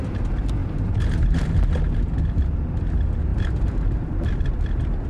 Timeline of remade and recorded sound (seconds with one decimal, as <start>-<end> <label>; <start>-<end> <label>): 0.0-0.6 recorded; 0.6-2.4 remade; 2.4-3.3 recorded; 3.3-4.3 remade; 4.3-5.1 recorded